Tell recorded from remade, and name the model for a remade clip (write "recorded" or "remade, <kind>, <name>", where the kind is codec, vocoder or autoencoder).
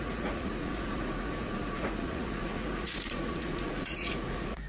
remade, vocoder, Vocos